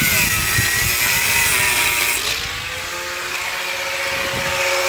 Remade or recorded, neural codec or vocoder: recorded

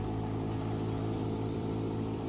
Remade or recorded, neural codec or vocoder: remade, vocoder, BigVGAN v2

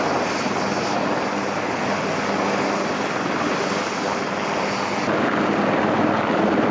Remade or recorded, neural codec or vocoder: recorded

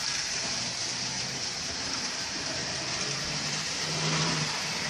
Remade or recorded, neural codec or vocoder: remade, vocoder, BigVGAN v2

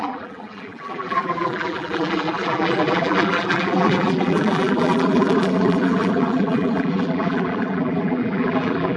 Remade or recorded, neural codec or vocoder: remade, vocoder, BigVGAN v2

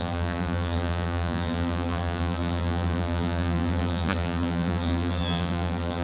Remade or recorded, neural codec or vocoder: remade, vocoder, BigVGAN v2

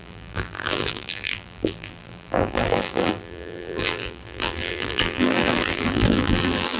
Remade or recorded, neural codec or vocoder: remade, vocoder, BigVGAN v2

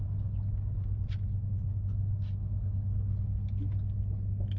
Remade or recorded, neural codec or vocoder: recorded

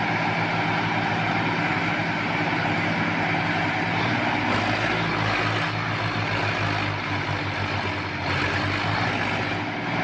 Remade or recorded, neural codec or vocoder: recorded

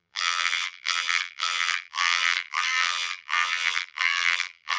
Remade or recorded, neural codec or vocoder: remade, vocoder, BigVGAN v2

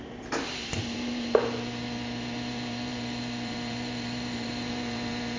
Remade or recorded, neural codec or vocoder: remade, vocoder, BigVGAN v2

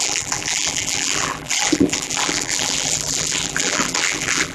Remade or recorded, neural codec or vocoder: remade, vocoder, BigVGAN v2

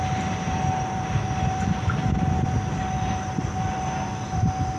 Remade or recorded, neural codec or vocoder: remade, vocoder, BigVGAN v2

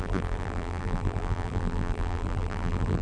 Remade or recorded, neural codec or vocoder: remade, vocoder, BigVGAN v2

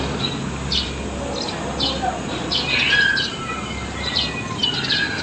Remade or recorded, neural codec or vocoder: recorded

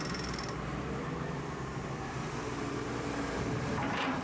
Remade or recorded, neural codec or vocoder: remade, vocoder, BigVGAN v2